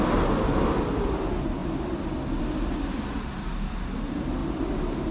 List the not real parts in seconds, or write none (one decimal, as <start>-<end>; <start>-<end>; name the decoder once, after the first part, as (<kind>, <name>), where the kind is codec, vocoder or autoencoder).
4.4-5.1 (vocoder, BigVGAN v2)